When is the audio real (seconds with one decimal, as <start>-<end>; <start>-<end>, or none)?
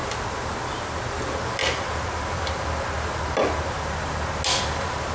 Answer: 0.0-5.1